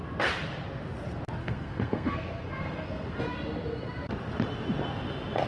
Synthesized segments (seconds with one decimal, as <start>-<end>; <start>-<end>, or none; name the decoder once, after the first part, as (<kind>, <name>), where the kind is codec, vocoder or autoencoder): 1.4-3.2 (codec, SNAC)